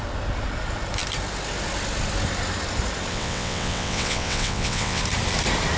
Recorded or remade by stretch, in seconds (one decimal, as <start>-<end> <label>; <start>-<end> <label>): 0.0-3.1 recorded; 3.1-5.0 remade; 5.0-5.8 recorded